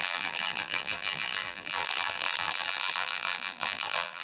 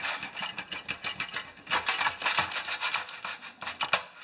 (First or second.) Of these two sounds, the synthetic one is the first